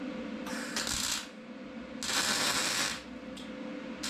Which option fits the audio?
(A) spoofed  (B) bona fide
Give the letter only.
B